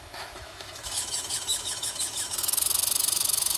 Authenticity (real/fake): fake